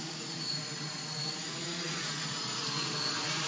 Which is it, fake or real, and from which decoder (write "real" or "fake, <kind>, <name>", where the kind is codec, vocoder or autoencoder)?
fake, vocoder, Vocos